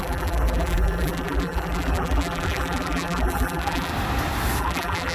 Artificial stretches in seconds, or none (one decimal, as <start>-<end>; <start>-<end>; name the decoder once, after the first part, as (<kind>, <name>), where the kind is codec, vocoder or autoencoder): 0.0-3.9 (vocoder, BigVGAN v2); 4.6-5.1